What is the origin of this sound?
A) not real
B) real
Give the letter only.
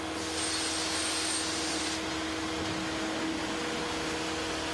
B